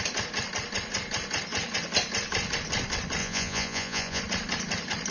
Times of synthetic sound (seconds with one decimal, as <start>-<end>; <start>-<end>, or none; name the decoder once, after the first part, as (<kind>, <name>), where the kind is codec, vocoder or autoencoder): 3.2-4.2 (vocoder, Vocos)